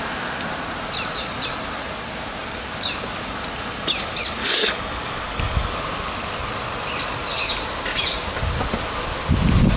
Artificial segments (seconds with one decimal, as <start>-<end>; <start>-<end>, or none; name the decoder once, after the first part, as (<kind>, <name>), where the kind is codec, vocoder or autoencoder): 4.4-5.7 (codec, DAC)